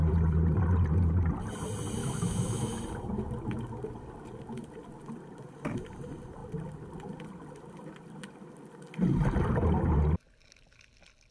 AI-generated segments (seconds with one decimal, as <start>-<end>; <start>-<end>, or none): 2.0-2.8